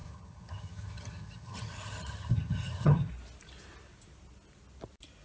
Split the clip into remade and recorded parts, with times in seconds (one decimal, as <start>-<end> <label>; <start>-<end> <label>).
0.0-3.1 remade; 3.1-5.2 recorded

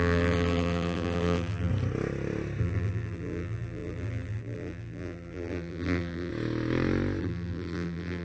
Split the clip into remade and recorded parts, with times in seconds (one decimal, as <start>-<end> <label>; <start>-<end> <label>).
0.0-1.7 remade; 1.7-2.6 recorded; 2.6-6.3 remade; 6.3-7.2 recorded; 7.2-8.2 remade

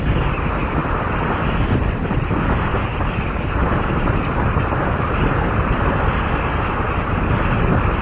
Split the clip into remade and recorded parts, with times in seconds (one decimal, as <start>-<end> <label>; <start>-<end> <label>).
0.0-8.0 recorded

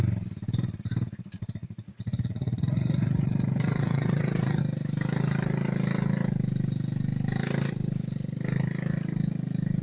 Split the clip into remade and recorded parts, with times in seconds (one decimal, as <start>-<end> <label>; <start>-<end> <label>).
0.0-1.6 recorded; 1.6-4.6 remade; 4.6-9.8 recorded

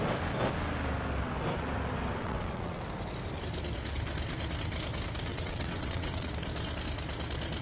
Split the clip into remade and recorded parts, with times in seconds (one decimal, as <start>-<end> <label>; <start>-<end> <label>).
0.0-2.2 recorded; 2.2-2.8 remade; 2.8-5.3 recorded; 5.3-6.3 remade; 6.3-7.6 recorded